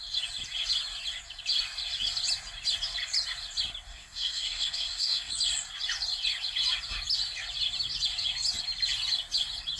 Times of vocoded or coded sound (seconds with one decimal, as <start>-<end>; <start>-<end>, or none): 3.9-5.3